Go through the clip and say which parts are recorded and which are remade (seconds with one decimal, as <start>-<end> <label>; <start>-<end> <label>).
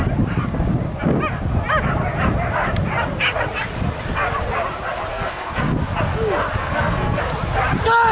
0.0-5.1 recorded; 5.1-5.6 remade; 5.6-6.6 recorded; 6.6-7.2 remade; 7.2-8.1 recorded